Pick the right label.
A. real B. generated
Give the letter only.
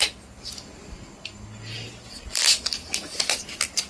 A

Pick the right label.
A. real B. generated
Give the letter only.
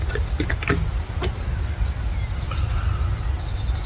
A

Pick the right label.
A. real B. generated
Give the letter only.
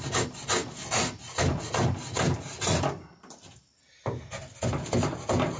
A